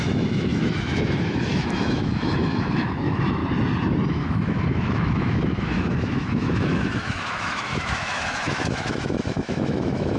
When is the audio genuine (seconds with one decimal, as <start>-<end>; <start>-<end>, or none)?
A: 3.4-4.1